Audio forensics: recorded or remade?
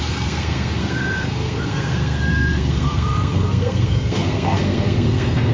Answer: remade